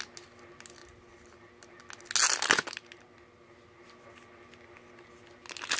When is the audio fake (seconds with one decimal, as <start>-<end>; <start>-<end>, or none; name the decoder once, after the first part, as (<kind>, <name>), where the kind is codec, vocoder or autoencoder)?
none